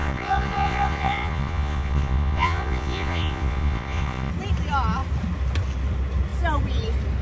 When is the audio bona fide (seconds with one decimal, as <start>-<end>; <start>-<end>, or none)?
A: 4.3-7.2